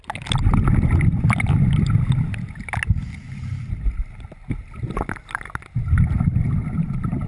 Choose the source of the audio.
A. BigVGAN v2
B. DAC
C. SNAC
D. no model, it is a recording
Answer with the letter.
D